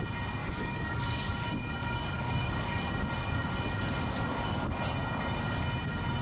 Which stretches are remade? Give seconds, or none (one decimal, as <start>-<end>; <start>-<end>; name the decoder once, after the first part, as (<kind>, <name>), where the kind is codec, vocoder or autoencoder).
0.4-2.8 (codec, DAC); 4.3-4.8